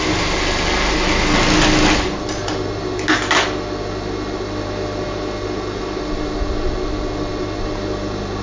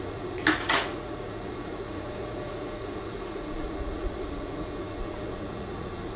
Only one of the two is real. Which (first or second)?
first